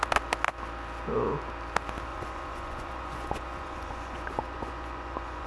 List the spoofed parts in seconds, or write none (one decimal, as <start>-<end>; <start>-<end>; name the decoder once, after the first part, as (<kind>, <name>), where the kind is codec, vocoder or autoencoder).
2.1-5.5 (vocoder, Vocos)